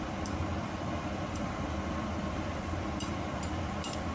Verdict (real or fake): fake